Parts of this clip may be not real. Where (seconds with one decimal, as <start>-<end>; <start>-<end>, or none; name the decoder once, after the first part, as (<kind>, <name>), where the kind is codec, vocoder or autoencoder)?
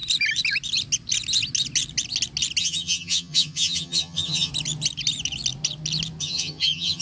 2.6-4.5 (vocoder, HiFi-GAN); 6.2-7.0